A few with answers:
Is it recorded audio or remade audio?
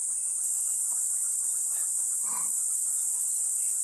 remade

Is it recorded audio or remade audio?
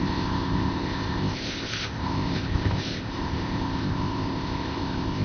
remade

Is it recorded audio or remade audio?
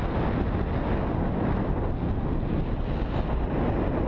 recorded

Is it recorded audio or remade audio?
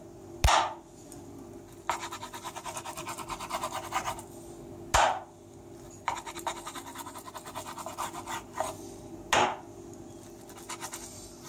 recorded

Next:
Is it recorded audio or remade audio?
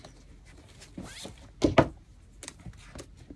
recorded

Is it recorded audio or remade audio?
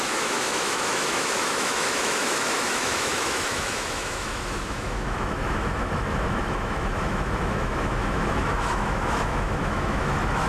remade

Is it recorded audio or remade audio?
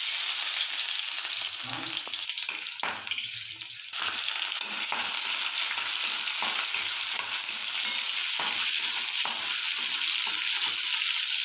recorded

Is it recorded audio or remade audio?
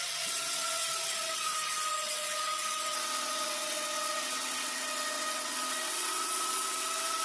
remade